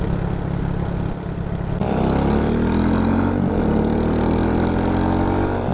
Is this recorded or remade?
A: recorded